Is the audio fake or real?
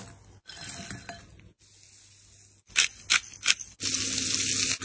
real